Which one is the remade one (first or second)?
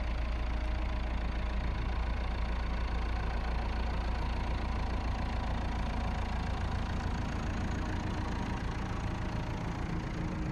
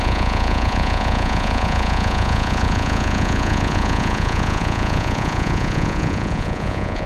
second